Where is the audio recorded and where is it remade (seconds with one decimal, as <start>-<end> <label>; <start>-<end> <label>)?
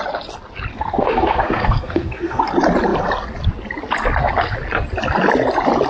0.0-0.7 recorded; 0.7-2.4 remade; 2.4-5.9 recorded